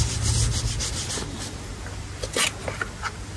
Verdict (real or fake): real